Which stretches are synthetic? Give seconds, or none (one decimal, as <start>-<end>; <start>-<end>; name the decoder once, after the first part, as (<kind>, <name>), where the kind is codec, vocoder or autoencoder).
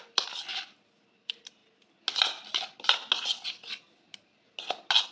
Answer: 0.0-0.5 (vocoder, BigVGAN v2); 1.0-1.6